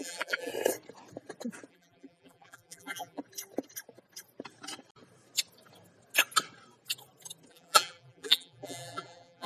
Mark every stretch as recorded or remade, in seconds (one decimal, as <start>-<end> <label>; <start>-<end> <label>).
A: 0.0-0.5 remade; 0.5-1.7 recorded; 1.7-3.2 remade; 3.2-7.5 recorded; 7.5-9.5 remade